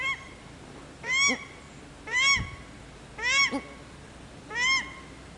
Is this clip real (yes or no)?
yes